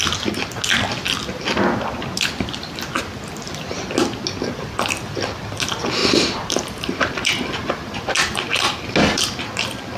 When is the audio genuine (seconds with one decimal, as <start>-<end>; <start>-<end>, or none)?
0.0-6.0; 7.3-10.0